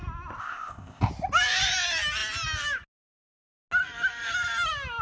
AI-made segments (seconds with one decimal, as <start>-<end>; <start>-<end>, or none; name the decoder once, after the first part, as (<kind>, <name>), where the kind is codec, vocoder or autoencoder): 0.4-1.1 (codec, ZipCodec)